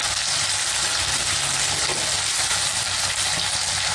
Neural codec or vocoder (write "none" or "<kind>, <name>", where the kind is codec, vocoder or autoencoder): none